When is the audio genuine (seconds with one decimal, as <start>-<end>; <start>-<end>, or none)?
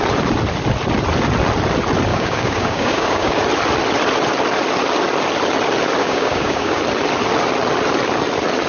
0.0-2.1; 3.4-6.0; 6.8-8.7